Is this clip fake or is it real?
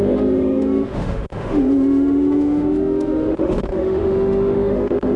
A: fake